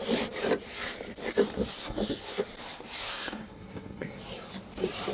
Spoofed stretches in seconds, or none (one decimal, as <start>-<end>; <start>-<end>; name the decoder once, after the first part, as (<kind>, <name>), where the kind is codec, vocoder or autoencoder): 1.8-2.4 (codec, SNAC); 3.0-4.2